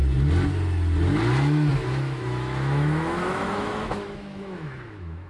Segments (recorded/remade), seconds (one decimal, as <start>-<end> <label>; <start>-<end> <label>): 0.0-1.7 recorded; 1.7-5.3 remade

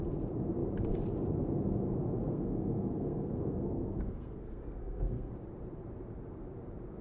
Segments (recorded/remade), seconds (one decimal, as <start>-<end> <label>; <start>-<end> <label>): 0.0-2.2 recorded; 2.2-5.3 remade; 5.3-7.0 recorded

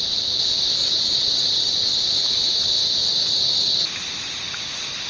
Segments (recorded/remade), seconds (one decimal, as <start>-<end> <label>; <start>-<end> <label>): 0.0-0.8 recorded; 0.8-1.9 remade; 1.9-5.1 recorded

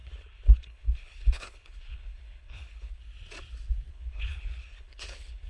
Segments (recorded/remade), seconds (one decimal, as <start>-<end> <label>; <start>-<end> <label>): 0.0-3.0 remade; 3.0-3.9 recorded; 3.9-5.5 remade

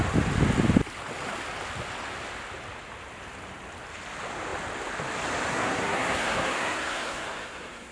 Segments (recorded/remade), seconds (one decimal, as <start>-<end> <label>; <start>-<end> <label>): 0.0-5.5 recorded; 5.5-7.9 remade

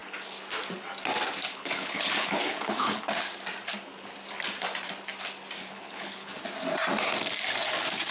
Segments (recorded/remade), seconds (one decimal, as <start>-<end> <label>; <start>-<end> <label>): 0.0-1.5 recorded; 1.5-3.0 remade; 3.0-5.6 recorded; 5.6-6.4 remade; 6.4-8.1 recorded

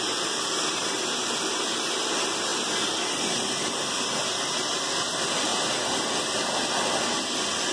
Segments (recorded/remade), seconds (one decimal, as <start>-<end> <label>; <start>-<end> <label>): 0.0-7.7 recorded

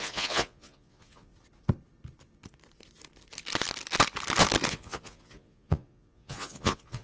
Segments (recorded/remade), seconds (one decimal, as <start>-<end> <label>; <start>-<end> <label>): 0.0-1.3 remade; 1.3-4.7 recorded; 4.7-7.0 remade